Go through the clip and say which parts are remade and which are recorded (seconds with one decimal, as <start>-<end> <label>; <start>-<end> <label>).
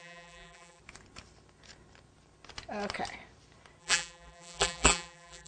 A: 0.0-0.8 remade; 0.8-3.8 recorded; 3.8-5.5 remade